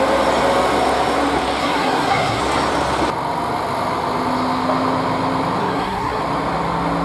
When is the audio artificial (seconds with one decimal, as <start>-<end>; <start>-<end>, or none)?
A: 1.6-2.4; 5.6-6.2